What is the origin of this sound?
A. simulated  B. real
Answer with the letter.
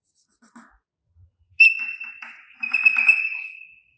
B